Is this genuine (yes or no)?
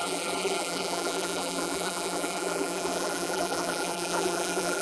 no